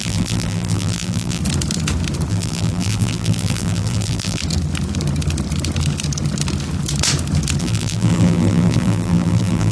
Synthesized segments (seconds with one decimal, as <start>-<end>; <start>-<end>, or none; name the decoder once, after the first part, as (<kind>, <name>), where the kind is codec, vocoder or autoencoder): 0.0-1.4 (vocoder, BigVGAN v2); 2.3-4.4; 7.6-9.7